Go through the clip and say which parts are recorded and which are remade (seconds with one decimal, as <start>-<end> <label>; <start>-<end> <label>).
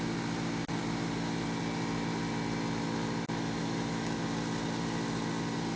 0.0-3.6 recorded; 3.6-4.2 remade; 4.2-5.8 recorded